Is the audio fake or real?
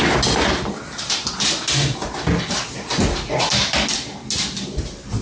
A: real